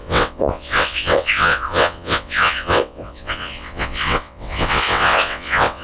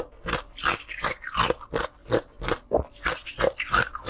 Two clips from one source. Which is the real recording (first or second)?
second